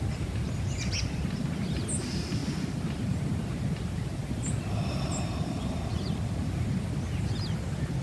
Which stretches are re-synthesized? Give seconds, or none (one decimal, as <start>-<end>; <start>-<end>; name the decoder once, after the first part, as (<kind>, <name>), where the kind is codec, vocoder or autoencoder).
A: none